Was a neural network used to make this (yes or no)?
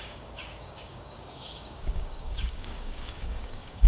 yes